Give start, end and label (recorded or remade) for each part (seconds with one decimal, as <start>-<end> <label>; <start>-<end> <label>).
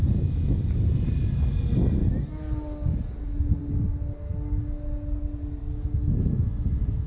0.0-7.1 recorded